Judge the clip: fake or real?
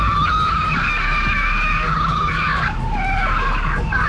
fake